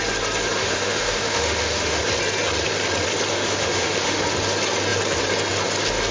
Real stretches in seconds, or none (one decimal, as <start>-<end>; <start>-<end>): 0.0-0.6; 2.0-3.3; 4.2-6.1